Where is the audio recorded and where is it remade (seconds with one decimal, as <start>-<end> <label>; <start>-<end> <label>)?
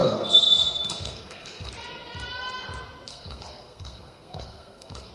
0.0-1.7 remade; 1.7-3.1 recorded; 3.1-5.1 remade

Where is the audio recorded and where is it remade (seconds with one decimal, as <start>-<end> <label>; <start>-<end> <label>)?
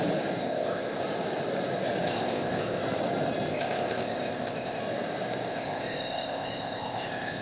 0.0-0.4 recorded; 0.4-1.0 remade; 1.0-2.0 recorded; 2.0-2.8 remade; 2.8-3.5 recorded; 3.5-4.8 remade; 4.8-5.5 recorded; 5.5-7.4 remade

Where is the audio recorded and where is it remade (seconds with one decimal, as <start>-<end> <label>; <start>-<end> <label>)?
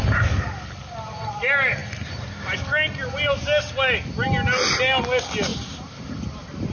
0.0-6.7 recorded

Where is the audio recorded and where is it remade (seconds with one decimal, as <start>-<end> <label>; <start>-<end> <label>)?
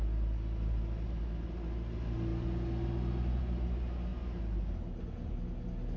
0.0-6.0 recorded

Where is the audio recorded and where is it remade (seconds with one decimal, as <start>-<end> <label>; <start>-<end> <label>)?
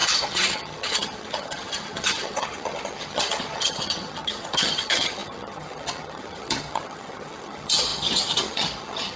0.0-9.2 remade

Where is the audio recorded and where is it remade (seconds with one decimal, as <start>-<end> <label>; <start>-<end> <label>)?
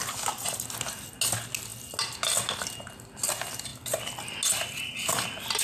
0.0-5.6 recorded